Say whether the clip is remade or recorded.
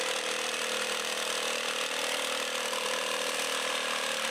remade